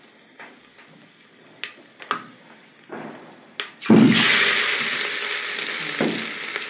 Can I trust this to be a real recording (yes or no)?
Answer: yes